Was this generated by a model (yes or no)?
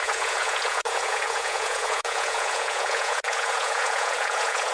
yes